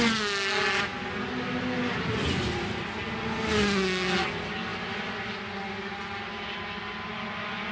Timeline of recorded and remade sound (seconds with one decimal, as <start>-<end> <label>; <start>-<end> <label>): 0.0-7.7 recorded